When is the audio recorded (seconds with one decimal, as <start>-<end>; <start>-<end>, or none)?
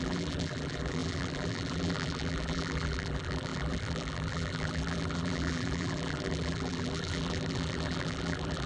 none